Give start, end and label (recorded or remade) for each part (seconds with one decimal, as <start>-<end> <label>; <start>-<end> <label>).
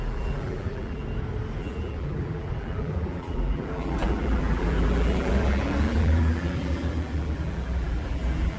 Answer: 0.0-1.0 remade; 1.0-1.6 recorded; 1.6-8.6 remade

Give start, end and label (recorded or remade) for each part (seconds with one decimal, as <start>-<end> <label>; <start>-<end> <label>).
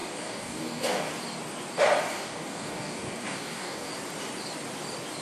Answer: 0.0-1.1 remade; 1.1-2.1 recorded; 2.1-3.9 remade; 3.9-5.2 recorded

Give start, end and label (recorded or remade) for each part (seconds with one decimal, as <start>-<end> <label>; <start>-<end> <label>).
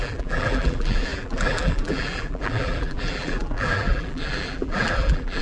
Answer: 0.0-5.4 remade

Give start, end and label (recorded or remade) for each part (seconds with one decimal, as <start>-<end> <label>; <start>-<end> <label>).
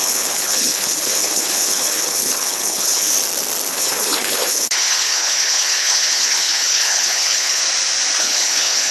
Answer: 0.0-3.1 remade; 3.1-3.7 recorded; 3.7-7.6 remade; 7.6-8.2 recorded; 8.2-8.9 remade